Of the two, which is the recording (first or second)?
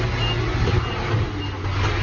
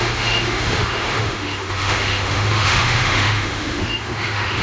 first